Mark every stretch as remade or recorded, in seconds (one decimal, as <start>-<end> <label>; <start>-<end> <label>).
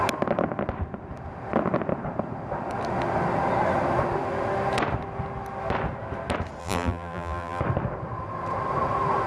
0.0-6.6 recorded; 6.6-7.6 remade; 7.6-9.3 recorded